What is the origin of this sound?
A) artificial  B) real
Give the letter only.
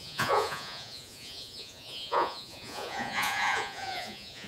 A